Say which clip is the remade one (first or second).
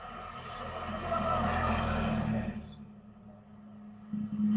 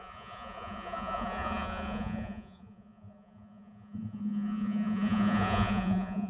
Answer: second